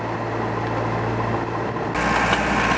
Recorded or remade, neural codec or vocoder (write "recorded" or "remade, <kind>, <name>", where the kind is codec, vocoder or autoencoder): recorded